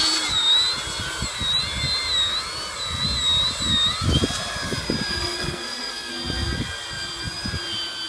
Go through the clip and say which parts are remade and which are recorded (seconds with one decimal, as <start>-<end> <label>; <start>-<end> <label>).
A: 0.0-5.1 recorded; 5.1-6.1 remade; 6.1-8.1 recorded